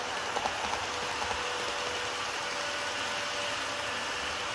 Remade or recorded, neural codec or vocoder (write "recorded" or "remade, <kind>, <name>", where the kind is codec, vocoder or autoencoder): recorded